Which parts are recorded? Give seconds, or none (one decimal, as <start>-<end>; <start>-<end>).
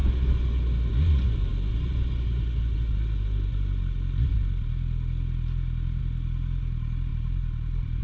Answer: 0.0-7.1